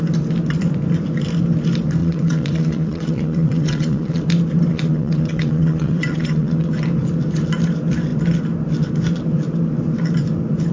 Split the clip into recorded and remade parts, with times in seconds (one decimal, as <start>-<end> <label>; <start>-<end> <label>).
0.0-2.0 recorded; 2.0-4.2 remade; 4.2-4.7 recorded; 4.7-6.7 remade; 6.7-10.7 recorded